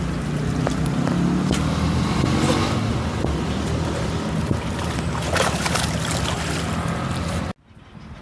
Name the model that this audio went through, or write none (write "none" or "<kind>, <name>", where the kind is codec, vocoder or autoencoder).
none